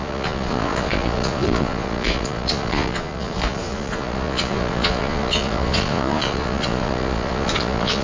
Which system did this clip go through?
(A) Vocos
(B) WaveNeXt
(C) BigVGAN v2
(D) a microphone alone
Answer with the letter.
A